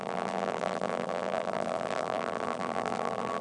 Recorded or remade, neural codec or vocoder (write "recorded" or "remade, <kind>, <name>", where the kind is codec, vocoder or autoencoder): remade, vocoder, BigVGAN v2